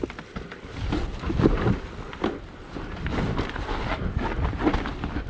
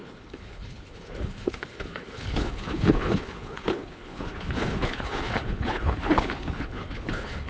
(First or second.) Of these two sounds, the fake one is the second